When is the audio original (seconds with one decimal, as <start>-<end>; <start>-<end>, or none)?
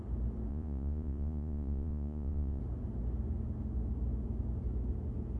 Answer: 0.0-0.5; 2.6-5.4